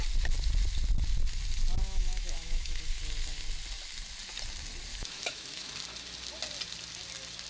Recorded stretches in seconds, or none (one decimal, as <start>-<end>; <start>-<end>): 0.0-1.8; 2.8-4.9; 5.7-7.5